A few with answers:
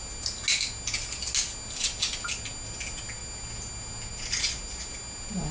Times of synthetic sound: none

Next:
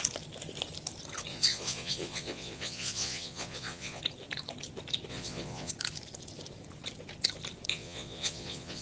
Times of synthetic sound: 1.3-4.0 (vocoder, Vocos); 5.1-5.7; 7.7-8.8

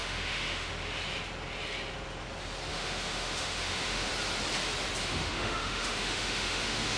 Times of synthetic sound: 0.0-0.7 (autoencoder, DAC-VAE); 2.7-4.1; 5.0-7.0

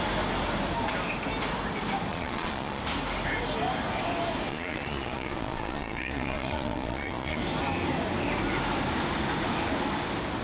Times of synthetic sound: 2.1-2.8 (vocoder, Vocos); 4.5-7.4

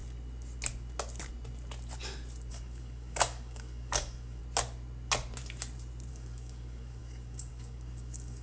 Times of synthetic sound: 2.5-4.4 (codec, DAC); 6.1-8.4

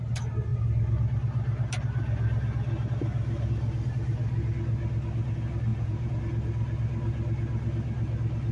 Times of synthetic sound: 5.7-6.2 (vocoder, Vocos)